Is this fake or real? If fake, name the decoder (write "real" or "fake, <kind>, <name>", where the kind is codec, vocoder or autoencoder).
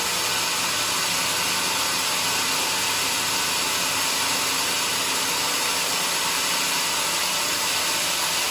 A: real